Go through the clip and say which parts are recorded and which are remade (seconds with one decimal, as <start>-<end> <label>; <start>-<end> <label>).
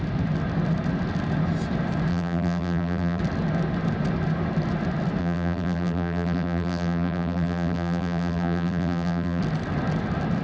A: 0.0-2.1 recorded; 2.1-3.2 remade; 3.2-5.2 recorded; 5.2-9.4 remade; 9.4-10.4 recorded